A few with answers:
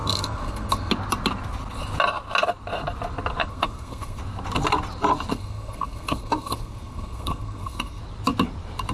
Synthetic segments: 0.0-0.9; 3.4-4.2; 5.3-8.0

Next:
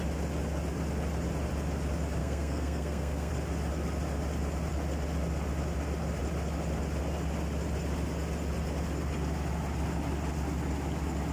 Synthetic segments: 2.2-3.3

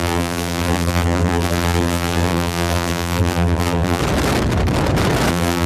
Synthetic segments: 0.0-4.0; 5.3-5.7

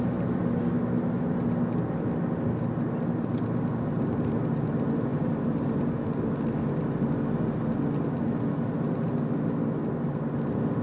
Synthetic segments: none

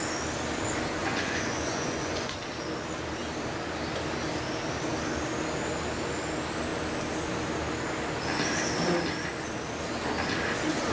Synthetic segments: 1.0-2.4

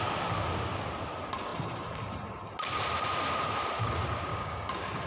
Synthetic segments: 4.3-5.1

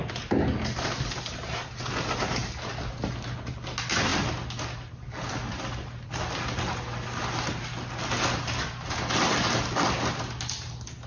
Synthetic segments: none